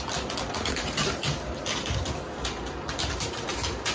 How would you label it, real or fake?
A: real